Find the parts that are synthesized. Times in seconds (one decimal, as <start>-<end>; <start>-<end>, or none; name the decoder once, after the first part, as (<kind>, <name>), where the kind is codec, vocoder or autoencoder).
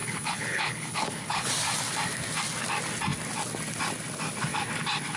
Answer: 0.0-1.5 (codec, HILCodec)